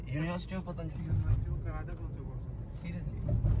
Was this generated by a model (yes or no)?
no